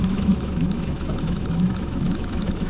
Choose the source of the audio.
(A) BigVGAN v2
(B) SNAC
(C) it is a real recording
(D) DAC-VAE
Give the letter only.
D